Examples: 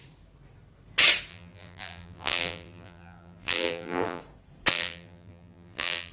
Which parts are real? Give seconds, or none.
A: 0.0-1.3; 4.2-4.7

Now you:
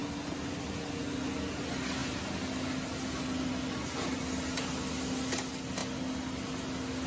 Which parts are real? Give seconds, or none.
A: 0.0-7.1

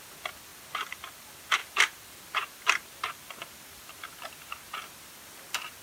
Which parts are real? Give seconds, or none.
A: 0.0-1.6; 5.1-5.8

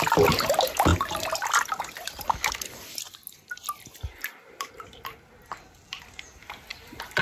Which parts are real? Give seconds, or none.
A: 0.0-7.2

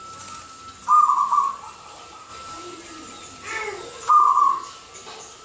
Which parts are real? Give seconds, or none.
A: 0.0-2.3; 4.1-5.4